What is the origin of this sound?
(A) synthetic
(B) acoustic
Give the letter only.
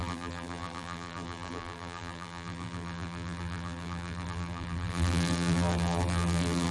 A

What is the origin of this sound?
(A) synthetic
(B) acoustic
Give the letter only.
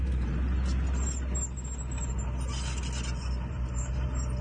B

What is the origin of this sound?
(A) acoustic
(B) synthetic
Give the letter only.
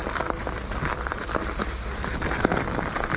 A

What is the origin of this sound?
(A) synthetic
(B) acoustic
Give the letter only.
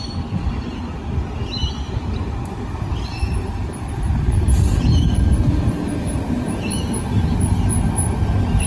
B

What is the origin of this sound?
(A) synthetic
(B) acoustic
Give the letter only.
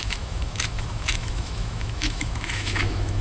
A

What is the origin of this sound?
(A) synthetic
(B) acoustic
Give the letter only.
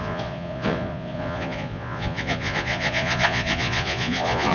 A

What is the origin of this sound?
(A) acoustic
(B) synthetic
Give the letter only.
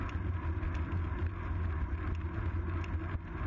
A